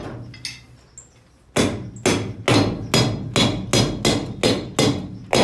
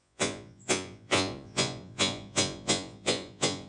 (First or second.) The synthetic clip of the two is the second